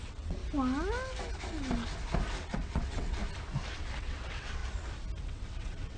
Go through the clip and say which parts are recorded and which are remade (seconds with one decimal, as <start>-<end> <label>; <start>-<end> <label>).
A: 0.0-0.4 remade; 0.4-2.4 recorded; 2.4-3.2 remade; 3.2-4.0 recorded; 4.0-4.6 remade; 4.6-5.2 recorded; 5.2-6.0 remade